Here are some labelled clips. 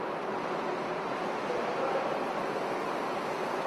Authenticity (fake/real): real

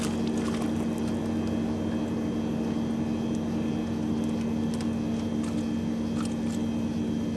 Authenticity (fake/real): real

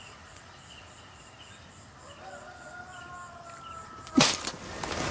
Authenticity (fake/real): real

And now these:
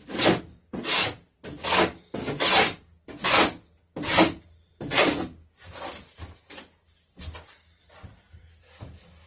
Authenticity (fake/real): real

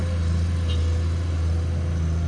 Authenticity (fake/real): real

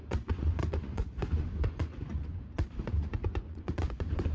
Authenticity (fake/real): fake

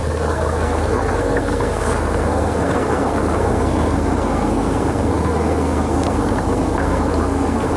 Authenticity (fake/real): fake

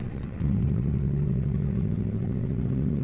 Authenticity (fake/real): fake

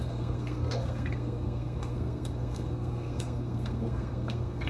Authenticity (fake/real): fake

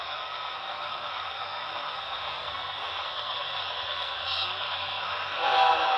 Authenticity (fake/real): fake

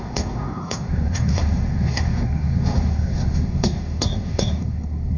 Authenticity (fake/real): fake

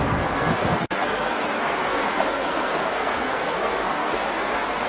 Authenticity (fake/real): fake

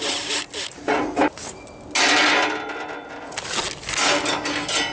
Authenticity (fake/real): real